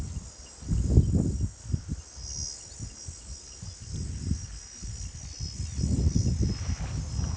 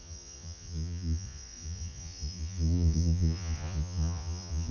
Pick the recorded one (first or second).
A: first